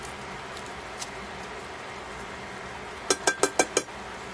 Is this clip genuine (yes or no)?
yes